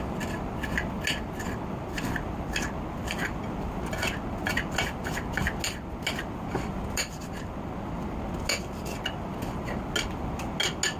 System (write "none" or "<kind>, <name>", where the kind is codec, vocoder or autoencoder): none